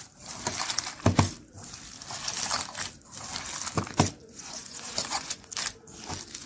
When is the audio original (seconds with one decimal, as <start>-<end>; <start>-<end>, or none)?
0.0-4.2; 5.5-6.5